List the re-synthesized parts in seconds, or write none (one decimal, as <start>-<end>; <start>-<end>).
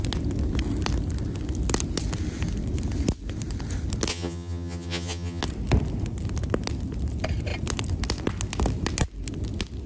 4.1-5.4